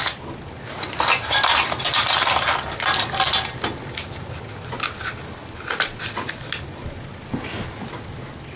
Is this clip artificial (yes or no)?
no